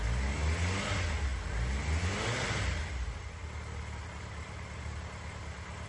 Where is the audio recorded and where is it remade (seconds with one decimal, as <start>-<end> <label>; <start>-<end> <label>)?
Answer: 0.0-5.9 recorded